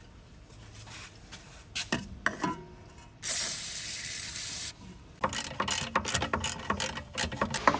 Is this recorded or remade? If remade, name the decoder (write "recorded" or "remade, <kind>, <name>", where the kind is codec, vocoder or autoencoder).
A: recorded